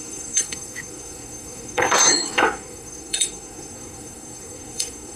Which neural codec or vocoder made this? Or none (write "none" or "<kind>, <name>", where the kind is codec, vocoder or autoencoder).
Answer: codec, SNAC